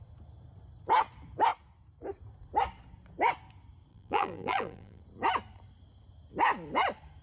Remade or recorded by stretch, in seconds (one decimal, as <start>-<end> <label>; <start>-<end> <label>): 0.0-3.9 recorded; 3.9-5.0 remade; 5.0-7.2 recorded